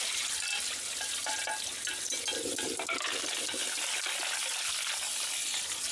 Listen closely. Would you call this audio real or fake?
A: real